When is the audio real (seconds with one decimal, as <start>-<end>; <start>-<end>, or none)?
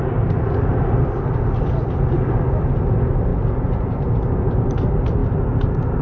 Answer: 0.0-6.0